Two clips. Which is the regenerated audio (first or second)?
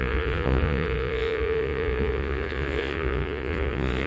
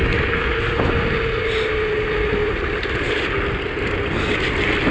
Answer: first